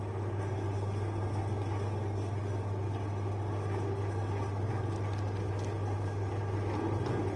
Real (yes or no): yes